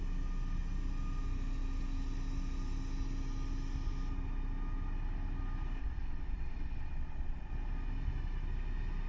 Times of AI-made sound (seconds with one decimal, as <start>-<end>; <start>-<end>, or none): 5.8-7.5